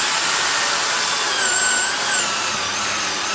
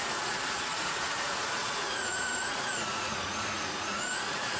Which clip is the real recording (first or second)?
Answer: first